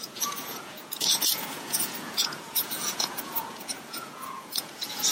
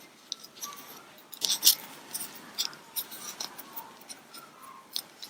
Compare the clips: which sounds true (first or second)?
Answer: second